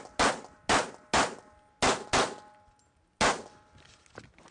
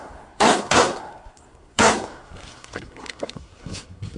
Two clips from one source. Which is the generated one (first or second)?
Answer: second